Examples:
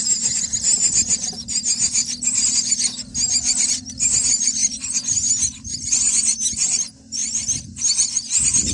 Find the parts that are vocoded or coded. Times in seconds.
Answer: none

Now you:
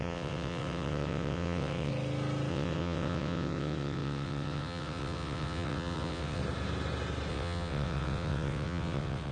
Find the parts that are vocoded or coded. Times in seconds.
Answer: 0.0-1.9 (vocoder, WaveNeXt); 2.5-6.4; 7.3-9.3

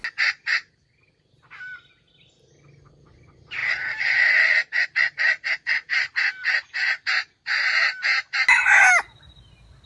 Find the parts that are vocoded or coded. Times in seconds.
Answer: 3.6-6.5 (vocoder, BigVGAN v2)

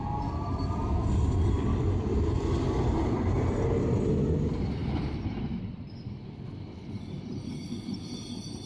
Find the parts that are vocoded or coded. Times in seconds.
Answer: none

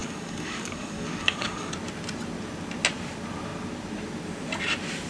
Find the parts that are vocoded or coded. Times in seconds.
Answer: 0.0-1.7 (codec, DAC)